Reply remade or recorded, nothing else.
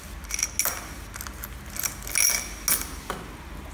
recorded